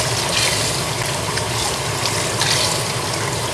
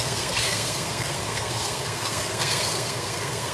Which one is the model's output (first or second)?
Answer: second